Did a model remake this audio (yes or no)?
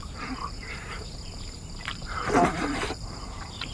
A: yes